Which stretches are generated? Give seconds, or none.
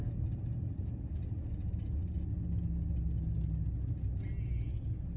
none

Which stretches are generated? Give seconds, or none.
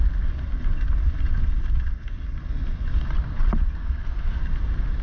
3.8-4.4